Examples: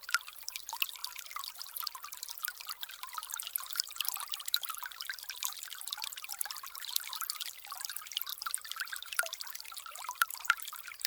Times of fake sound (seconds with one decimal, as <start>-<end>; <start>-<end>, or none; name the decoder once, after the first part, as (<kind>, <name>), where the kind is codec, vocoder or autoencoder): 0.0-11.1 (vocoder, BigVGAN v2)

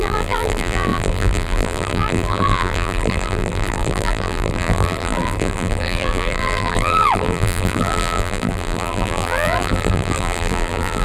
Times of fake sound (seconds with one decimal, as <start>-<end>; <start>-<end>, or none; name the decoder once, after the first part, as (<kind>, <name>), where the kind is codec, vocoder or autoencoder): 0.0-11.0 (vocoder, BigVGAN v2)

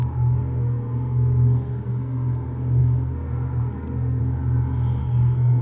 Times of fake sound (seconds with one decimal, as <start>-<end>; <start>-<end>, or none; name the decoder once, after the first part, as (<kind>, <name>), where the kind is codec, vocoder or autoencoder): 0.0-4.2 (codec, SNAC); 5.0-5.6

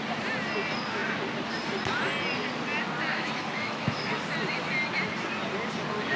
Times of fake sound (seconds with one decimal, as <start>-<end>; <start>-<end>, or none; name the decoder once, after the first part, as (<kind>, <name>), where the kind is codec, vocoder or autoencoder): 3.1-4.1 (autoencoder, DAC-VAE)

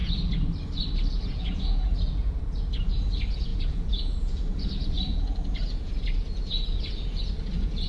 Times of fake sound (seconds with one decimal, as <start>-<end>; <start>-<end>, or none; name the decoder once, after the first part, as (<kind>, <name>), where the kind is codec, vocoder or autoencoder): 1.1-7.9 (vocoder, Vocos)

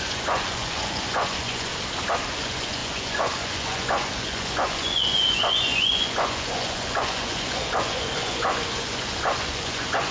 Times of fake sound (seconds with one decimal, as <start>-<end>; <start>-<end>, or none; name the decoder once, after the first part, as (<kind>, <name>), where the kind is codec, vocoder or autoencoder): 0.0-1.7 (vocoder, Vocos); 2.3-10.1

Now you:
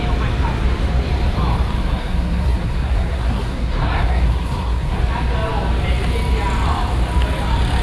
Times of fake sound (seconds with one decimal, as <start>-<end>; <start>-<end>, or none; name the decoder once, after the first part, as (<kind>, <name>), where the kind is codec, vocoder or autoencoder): 1.8-5.0 (codec, SNAC)

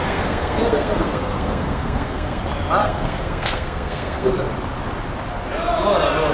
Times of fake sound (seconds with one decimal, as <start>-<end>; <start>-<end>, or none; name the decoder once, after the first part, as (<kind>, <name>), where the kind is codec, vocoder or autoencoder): 0.0-2.4 (codec, SNAC); 2.8-4.3